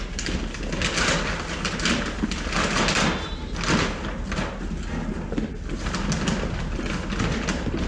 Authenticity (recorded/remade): recorded